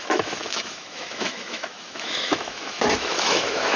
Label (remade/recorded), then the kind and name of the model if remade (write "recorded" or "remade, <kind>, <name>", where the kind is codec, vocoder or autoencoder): remade, autoencoder, DAC-VAE